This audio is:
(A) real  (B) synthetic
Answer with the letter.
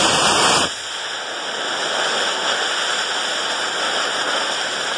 A